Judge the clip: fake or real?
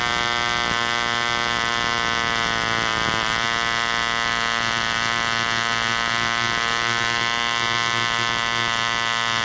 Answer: real